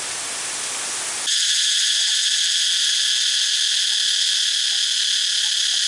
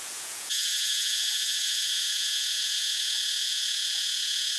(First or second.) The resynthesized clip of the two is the second